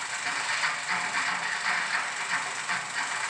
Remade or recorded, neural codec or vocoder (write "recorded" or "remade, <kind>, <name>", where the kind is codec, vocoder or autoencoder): recorded